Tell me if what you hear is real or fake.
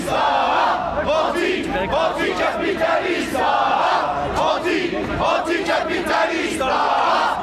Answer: real